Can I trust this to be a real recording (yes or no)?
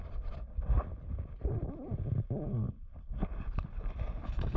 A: yes